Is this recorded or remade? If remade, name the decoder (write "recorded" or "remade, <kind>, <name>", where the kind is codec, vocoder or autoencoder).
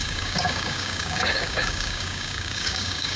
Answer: remade, codec, DAC